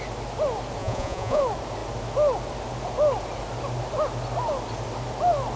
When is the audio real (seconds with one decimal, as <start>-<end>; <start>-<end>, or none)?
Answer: 0.0-0.8; 1.4-5.6